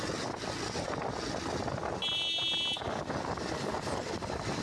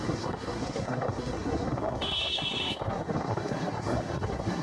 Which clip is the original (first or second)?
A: first